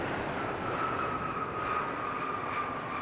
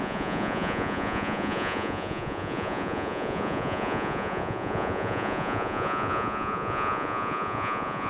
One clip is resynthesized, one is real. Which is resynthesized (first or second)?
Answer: second